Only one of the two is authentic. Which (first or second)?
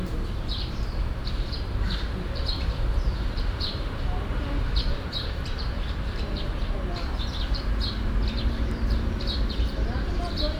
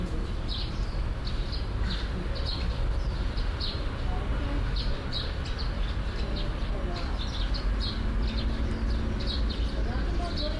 second